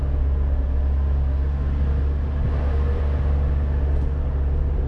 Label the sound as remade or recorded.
recorded